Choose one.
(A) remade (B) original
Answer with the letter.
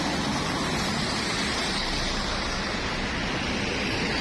B